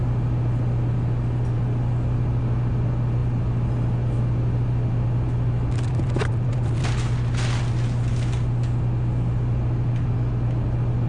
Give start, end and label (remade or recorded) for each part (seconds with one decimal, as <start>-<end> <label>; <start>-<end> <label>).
0.0-11.1 recorded